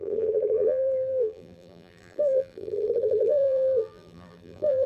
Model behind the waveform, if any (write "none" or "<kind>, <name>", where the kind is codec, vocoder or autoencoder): vocoder, BigVGAN v2